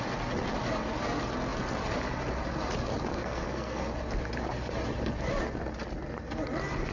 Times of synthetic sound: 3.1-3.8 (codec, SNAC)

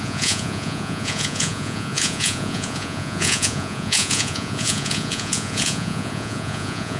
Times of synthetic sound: 0.0-7.0 (vocoder, Vocos)

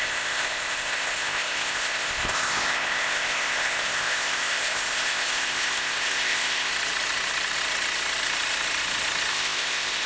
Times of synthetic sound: 0.0-6.7 (codec, ZipCodec); 9.3-10.1

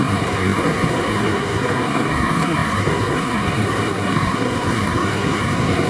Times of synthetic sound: 0.0-5.9 (codec, SNAC)

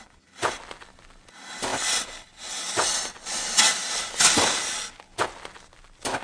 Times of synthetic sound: none